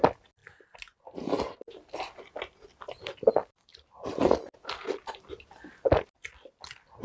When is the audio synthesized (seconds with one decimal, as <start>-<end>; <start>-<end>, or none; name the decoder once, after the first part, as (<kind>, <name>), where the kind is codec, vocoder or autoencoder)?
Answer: none